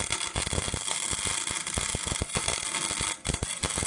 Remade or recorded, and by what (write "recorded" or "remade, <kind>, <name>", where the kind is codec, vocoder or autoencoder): recorded